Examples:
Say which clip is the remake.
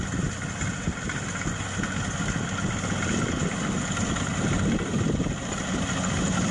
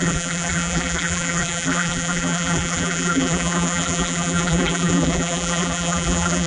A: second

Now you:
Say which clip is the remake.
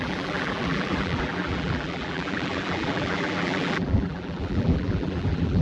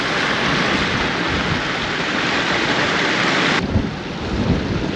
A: first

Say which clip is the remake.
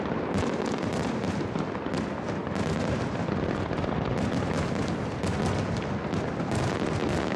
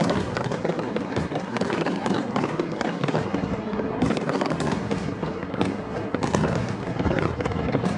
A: second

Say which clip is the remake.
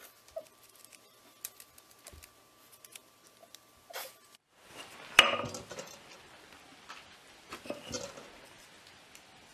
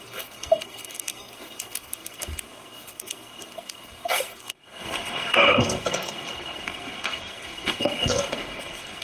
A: second